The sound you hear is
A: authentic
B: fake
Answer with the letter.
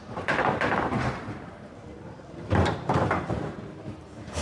B